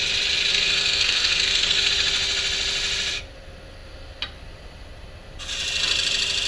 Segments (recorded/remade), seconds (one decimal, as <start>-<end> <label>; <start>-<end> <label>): 0.0-0.5 recorded; 0.5-1.9 remade; 1.9-6.5 recorded